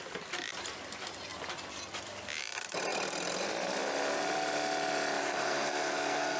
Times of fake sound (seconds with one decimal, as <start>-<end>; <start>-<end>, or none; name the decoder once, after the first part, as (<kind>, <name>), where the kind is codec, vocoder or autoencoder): 5.2-6.4 (codec, SNAC)